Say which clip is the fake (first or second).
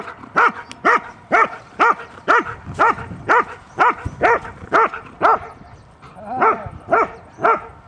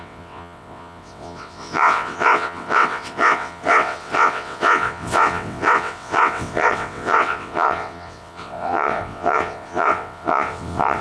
second